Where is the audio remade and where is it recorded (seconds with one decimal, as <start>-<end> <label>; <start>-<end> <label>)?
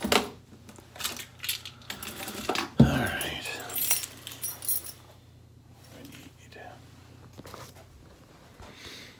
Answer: 0.0-4.8 recorded; 4.8-6.7 remade; 6.7-9.2 recorded